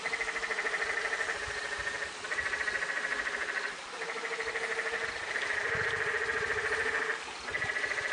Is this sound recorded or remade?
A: recorded